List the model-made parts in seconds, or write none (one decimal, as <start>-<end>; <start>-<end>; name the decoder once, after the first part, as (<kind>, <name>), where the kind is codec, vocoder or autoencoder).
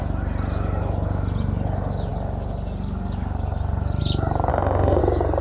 4.5-5.0 (autoencoder, DAC-VAE)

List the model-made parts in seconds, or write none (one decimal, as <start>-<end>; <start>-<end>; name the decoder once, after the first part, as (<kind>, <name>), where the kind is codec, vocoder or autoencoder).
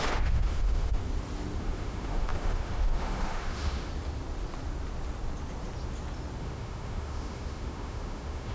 0.0-1.0 (autoencoder, DAC-VAE); 1.6-3.9; 6.4-8.5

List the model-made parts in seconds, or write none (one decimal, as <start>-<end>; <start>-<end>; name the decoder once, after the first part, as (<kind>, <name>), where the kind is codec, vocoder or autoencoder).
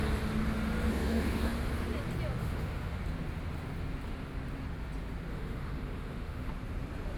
0.9-1.7 (autoencoder, DAC-VAE); 2.4-3.0; 5.3-6.5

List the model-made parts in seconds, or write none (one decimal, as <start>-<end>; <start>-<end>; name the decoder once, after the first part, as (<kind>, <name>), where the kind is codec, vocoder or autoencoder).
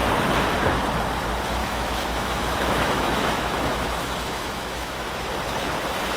1.6-5.3 (autoencoder, DAC-VAE)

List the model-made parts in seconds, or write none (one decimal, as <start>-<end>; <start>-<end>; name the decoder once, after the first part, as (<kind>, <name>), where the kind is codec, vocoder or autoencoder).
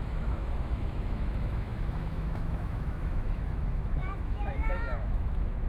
0.0-5.7 (autoencoder, DAC-VAE)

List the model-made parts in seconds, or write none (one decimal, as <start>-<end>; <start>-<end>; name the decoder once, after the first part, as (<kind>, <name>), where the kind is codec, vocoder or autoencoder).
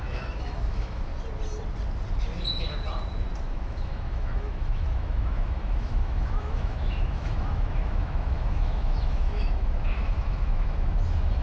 0.0-1.1 (autoencoder, DAC-VAE); 3.4-11.4